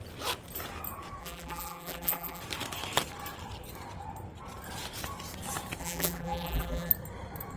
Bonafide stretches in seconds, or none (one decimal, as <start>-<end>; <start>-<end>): 0.0-1.2; 2.4-5.8; 6.9-7.6